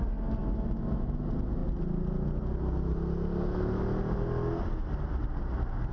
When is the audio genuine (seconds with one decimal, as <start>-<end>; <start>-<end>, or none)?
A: 0.0-0.4; 1.2-5.9